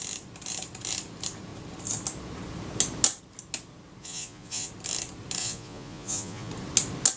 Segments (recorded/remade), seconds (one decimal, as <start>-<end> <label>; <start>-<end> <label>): 0.0-4.0 recorded; 4.0-4.7 remade; 4.7-5.4 recorded; 5.4-6.5 remade; 6.5-7.2 recorded